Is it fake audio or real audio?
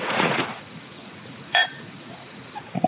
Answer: fake